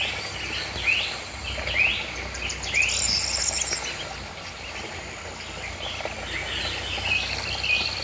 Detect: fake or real real